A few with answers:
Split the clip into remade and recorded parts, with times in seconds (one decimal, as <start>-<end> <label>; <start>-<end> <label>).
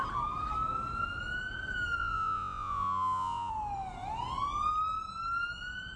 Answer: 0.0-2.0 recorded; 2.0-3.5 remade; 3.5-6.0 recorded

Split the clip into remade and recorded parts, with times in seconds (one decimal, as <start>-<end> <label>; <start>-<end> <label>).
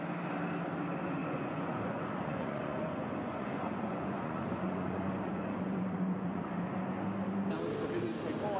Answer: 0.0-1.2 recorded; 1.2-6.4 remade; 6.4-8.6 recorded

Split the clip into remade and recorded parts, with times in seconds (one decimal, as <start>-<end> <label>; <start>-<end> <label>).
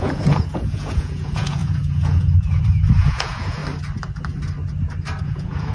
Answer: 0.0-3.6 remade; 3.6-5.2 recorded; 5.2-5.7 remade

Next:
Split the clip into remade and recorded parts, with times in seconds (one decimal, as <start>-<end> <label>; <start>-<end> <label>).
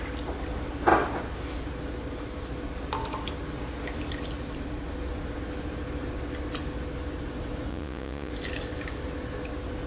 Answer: 0.0-7.7 recorded; 7.7-8.3 remade; 8.3-9.9 recorded